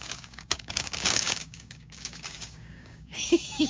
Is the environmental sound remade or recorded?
remade